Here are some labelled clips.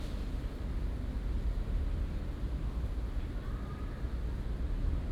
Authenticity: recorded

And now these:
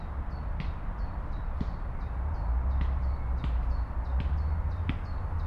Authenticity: recorded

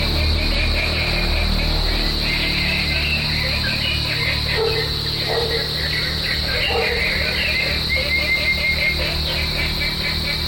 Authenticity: recorded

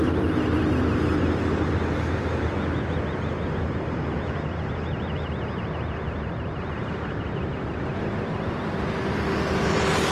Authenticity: recorded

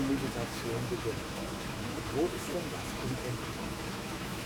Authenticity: remade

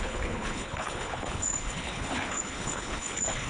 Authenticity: remade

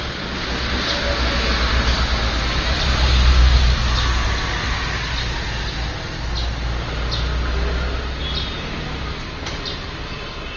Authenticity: recorded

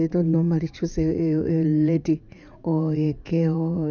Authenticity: remade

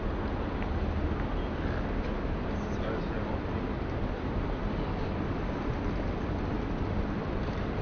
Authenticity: recorded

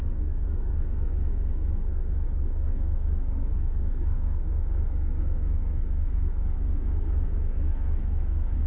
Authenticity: remade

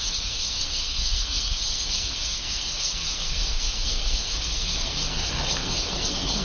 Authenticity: remade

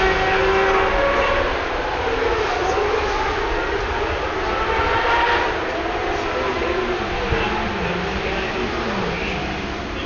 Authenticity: recorded